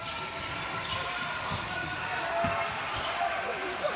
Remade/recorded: recorded